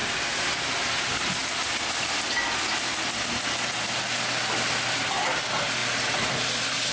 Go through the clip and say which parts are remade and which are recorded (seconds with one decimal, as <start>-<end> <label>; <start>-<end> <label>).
0.0-6.9 recorded